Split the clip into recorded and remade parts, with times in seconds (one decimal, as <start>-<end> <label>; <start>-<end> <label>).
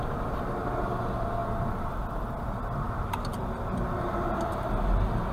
0.0-5.3 recorded